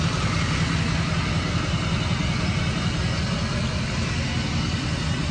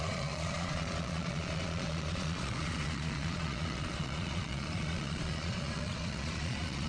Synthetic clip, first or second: second